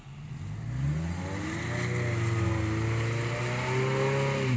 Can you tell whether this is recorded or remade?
recorded